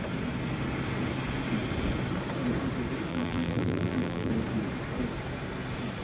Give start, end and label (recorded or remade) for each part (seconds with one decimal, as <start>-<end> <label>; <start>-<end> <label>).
0.0-3.1 recorded; 3.1-4.3 remade; 4.3-6.0 recorded